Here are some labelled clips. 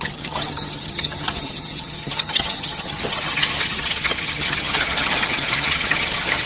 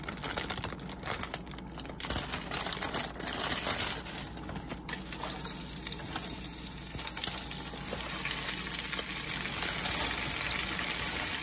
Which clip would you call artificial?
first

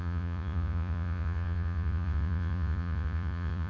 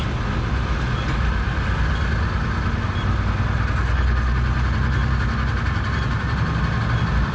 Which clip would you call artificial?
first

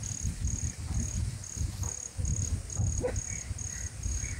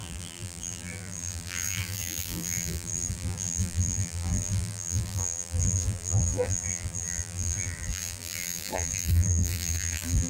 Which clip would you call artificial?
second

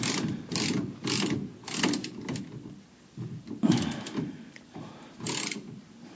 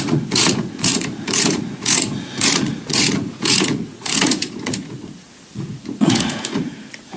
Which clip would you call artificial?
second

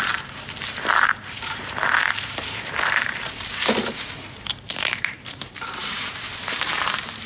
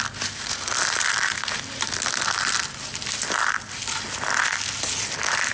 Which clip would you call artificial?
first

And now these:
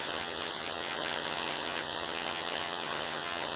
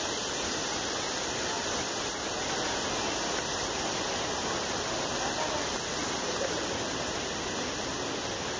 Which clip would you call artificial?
first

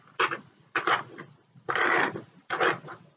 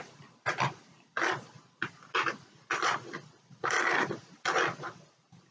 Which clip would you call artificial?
first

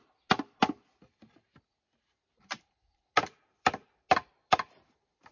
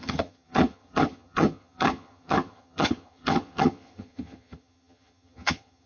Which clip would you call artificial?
second